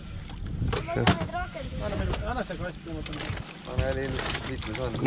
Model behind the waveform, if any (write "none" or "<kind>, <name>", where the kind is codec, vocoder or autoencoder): none